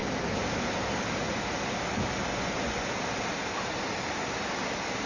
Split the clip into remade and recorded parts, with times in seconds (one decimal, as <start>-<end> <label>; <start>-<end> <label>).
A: 0.0-2.3 recorded; 2.3-2.9 remade; 2.9-5.1 recorded